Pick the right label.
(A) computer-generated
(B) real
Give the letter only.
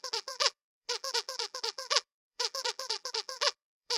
A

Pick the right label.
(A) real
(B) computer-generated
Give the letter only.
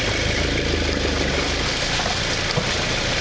A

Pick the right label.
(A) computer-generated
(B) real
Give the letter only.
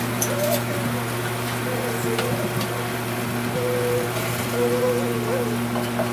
B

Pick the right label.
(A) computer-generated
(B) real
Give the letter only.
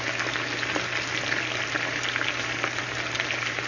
B